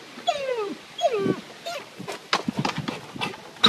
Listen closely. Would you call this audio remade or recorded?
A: recorded